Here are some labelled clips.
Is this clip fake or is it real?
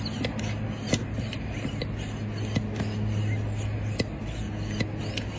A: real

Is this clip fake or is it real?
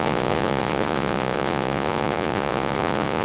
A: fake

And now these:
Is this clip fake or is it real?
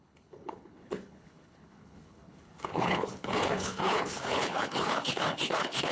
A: fake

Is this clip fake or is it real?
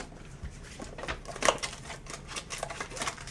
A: real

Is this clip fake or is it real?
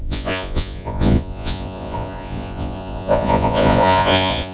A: fake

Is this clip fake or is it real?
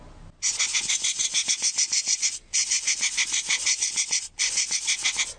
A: real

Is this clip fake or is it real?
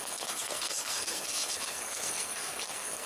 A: fake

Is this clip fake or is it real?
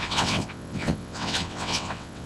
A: fake